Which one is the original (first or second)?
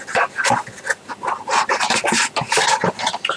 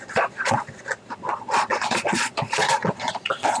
first